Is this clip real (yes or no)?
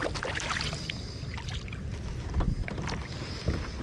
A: yes